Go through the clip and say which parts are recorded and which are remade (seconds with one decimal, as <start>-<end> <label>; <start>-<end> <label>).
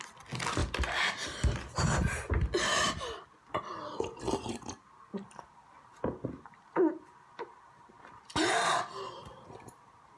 0.0-10.2 recorded